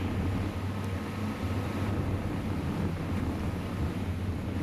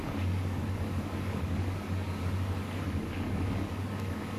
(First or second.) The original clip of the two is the first